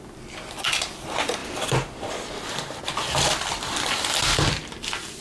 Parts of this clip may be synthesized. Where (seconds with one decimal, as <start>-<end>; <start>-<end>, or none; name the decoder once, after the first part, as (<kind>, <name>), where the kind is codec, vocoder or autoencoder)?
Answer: 1.4-4.1 (vocoder, BigVGAN v2)